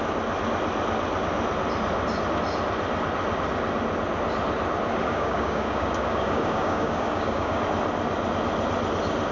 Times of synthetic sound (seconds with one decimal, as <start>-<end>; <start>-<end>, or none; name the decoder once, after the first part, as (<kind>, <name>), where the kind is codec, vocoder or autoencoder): 5.0-7.6 (codec, DAC)